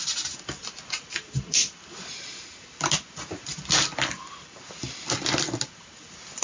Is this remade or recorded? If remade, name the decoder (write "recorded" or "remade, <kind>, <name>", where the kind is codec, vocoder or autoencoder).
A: recorded